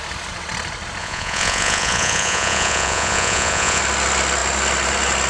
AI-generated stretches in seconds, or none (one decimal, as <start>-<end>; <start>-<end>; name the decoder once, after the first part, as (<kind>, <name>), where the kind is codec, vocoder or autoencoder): 1.0-3.8 (vocoder, Vocos)